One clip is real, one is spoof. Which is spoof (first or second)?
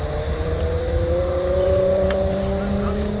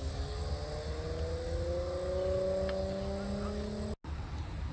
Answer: first